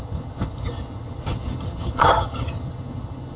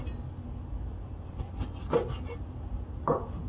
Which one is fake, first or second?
first